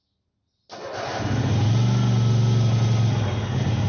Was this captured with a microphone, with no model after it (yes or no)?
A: yes